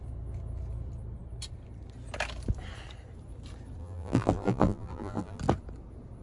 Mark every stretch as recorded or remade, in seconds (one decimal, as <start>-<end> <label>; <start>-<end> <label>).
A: 0.0-3.8 recorded; 3.8-5.4 remade; 5.4-6.2 recorded